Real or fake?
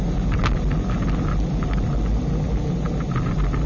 real